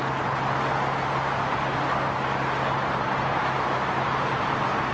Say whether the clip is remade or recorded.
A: recorded